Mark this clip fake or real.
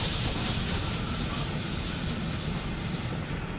real